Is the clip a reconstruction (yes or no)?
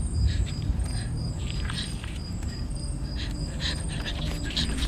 yes